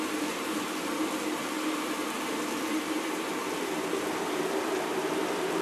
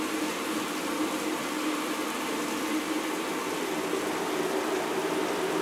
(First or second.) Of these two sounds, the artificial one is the first